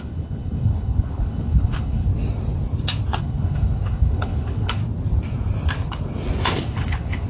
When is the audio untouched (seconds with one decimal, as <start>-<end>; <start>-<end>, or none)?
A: 2.1-3.2; 4.8-6.6